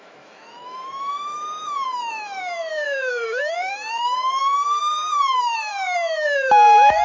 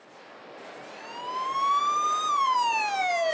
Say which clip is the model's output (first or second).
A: first